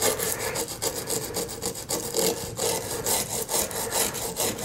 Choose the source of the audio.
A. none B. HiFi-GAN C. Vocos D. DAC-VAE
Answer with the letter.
A